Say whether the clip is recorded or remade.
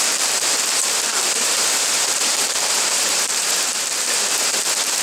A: remade